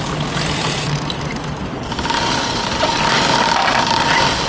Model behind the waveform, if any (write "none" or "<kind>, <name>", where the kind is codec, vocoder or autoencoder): none